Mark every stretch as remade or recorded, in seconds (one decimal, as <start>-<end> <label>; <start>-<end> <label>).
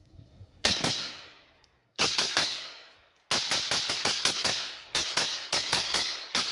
0.0-3.2 remade; 3.2-3.9 recorded; 3.9-6.5 remade